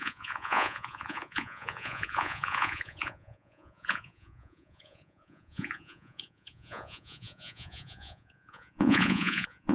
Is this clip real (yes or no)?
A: no